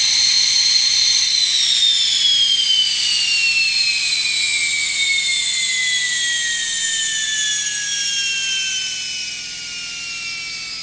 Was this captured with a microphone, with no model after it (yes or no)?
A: yes